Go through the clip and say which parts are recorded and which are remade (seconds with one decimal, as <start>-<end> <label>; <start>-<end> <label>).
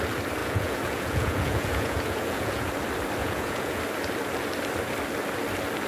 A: 0.0-0.4 recorded; 0.4-2.7 remade; 2.7-3.2 recorded; 3.2-3.8 remade; 3.8-5.9 recorded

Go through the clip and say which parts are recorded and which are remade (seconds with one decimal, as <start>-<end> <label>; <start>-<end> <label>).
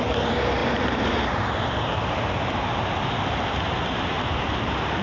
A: 0.0-5.0 remade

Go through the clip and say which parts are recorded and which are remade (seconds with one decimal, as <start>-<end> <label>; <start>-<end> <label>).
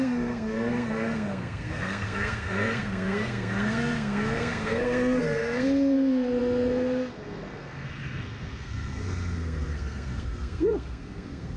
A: 0.0-11.6 remade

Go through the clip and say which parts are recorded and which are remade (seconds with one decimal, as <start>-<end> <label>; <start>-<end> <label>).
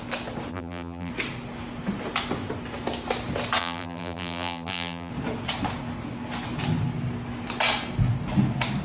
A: 0.0-0.5 recorded; 0.5-1.1 remade; 1.1-3.6 recorded; 3.6-5.1 remade; 5.1-8.8 recorded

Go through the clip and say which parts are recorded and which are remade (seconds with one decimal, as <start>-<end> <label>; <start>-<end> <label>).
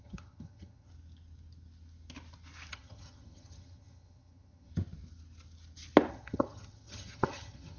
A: 0.0-0.9 remade; 0.9-2.7 recorded; 2.7-4.7 remade; 4.7-6.1 recorded; 6.1-7.8 remade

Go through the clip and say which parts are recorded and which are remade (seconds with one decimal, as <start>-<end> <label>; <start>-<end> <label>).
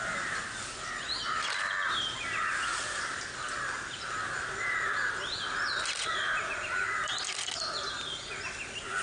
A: 0.0-2.7 recorded; 2.7-7.5 remade; 7.5-9.0 recorded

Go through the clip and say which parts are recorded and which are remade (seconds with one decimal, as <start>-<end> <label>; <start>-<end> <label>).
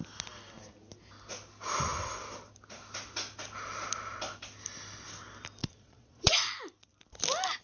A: 0.0-5.6 recorded; 5.6-6.3 remade; 6.3-7.6 recorded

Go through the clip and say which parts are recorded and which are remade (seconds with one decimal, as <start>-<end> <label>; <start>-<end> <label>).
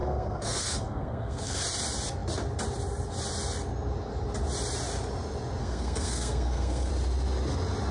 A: 0.0-1.6 remade; 1.6-5.6 recorded; 5.6-6.9 remade; 6.9-7.9 recorded